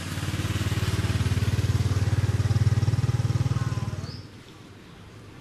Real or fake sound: real